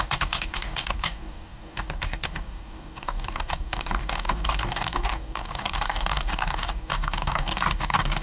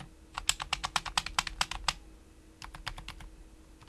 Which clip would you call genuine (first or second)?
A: second